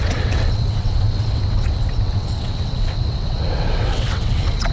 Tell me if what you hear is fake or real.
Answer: fake